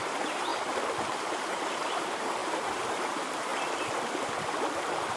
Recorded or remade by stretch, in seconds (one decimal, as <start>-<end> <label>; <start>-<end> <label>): 0.0-0.5 remade; 0.5-1.3 recorded; 1.3-3.5 remade; 3.5-5.2 recorded